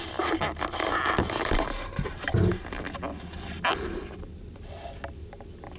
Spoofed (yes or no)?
no